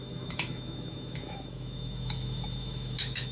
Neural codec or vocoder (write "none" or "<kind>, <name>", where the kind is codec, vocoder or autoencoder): autoencoder, DAC-VAE